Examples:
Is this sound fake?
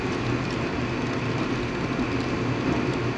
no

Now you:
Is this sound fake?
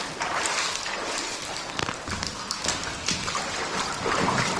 no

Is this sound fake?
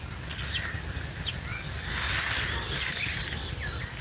no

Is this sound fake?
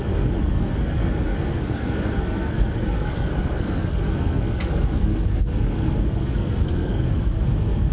yes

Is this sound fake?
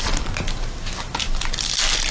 no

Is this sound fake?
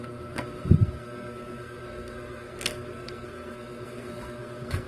yes